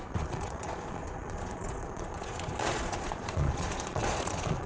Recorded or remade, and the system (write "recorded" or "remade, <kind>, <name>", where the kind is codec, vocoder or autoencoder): remade, vocoder, Vocos